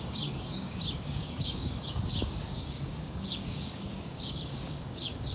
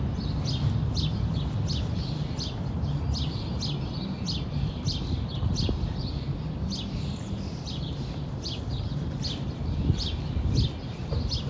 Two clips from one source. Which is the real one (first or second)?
second